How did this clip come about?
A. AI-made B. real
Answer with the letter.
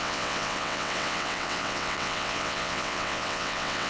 A